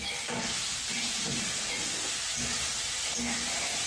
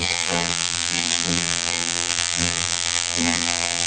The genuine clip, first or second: first